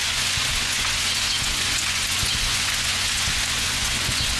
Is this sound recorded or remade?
remade